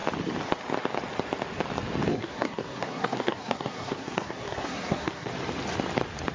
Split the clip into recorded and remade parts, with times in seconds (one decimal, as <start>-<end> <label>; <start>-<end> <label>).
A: 0.0-2.1 recorded; 2.1-5.3 remade; 5.3-6.3 recorded